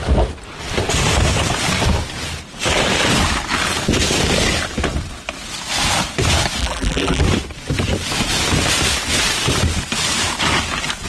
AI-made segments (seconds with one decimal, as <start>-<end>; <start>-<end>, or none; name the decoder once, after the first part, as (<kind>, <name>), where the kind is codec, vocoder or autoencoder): 6.6-7.2 (vocoder, BigVGAN v2)

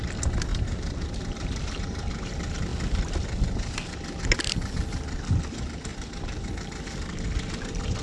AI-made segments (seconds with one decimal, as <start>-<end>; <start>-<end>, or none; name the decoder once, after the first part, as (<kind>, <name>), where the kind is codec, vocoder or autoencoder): 0.5-2.3 (vocoder, BigVGAN v2); 5.9-6.5